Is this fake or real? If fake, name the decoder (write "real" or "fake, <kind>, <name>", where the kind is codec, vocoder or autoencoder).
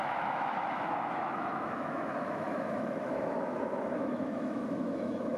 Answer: fake, autoencoder, DAC-VAE